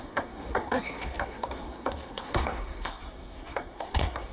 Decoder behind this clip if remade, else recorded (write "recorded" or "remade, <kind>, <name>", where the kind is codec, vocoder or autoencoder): remade, codec, SNAC